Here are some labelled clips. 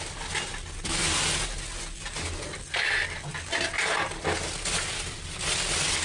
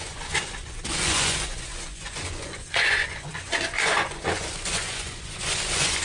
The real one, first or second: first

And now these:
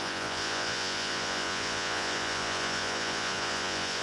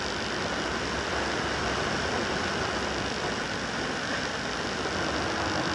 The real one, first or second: second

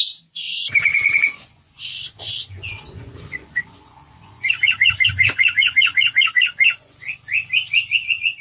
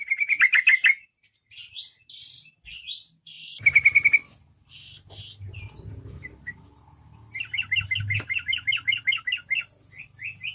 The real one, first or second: second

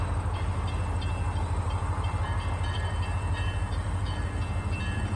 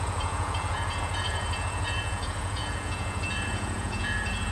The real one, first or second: first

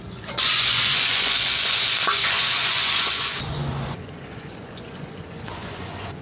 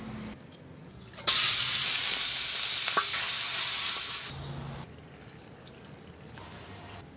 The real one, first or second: second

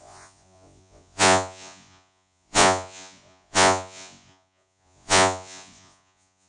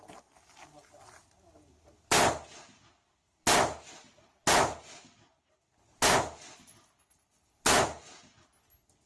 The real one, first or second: second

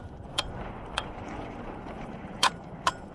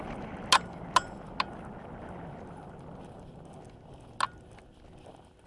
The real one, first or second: second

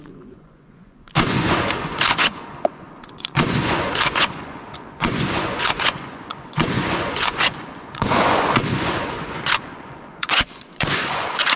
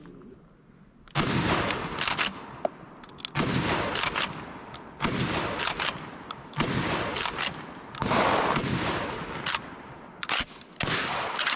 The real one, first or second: second